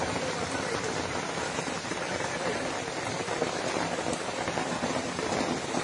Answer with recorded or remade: remade